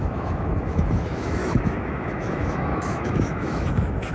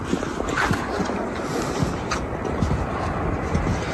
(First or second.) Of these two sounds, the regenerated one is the first